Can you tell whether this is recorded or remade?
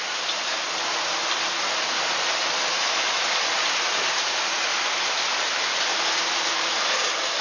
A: recorded